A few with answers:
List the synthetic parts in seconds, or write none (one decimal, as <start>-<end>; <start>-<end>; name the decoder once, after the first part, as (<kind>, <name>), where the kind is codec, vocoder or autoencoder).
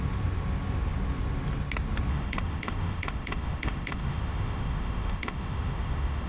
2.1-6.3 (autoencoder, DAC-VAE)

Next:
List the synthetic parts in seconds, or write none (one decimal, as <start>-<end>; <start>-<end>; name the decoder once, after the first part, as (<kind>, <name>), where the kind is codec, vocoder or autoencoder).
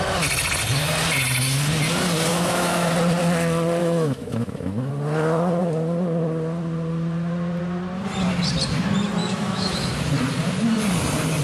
2.3-2.9 (autoencoder, DAC-VAE); 3.8-4.9; 9.2-9.9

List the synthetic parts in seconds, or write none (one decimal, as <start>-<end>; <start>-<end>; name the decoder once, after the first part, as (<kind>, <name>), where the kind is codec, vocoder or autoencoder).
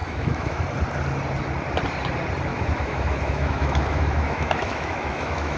0.0-0.6 (autoencoder, DAC-VAE); 2.5-5.6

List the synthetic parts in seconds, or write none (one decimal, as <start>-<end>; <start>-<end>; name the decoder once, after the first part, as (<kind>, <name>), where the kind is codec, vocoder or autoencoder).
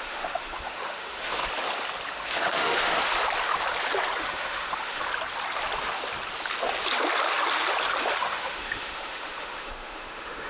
0.0-1.4 (autoencoder, DAC-VAE); 2.1-3.1; 4.2-5.1; 8.2-10.5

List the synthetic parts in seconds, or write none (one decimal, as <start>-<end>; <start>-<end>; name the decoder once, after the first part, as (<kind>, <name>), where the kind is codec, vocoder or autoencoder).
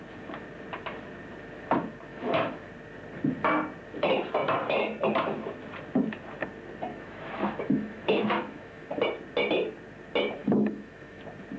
2.1-2.7 (autoencoder, DAC-VAE); 6.9-9.0; 10.4-11.2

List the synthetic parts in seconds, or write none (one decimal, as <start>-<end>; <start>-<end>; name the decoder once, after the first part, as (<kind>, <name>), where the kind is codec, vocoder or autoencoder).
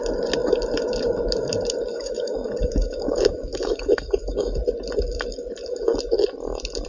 1.9-4.6 (autoencoder, DAC-VAE)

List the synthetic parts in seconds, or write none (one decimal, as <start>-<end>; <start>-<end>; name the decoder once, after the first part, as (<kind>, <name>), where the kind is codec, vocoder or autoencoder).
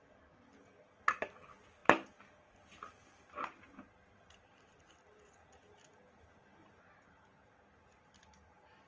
none